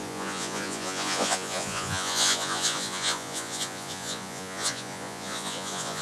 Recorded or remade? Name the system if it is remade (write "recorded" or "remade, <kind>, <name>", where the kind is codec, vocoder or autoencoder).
remade, vocoder, Vocos